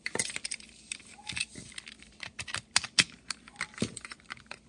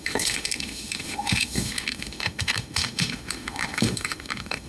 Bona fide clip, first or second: first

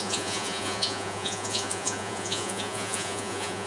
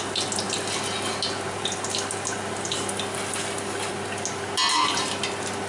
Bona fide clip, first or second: second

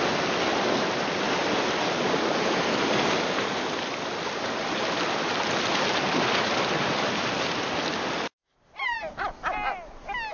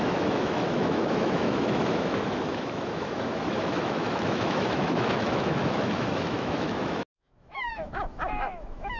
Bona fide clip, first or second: first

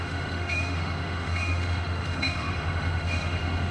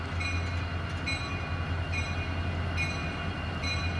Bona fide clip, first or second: second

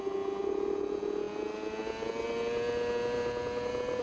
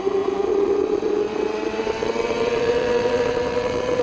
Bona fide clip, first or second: first